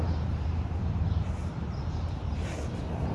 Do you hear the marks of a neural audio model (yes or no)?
yes